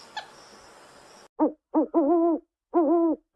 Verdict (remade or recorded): recorded